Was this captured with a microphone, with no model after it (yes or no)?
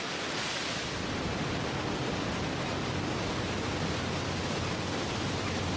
yes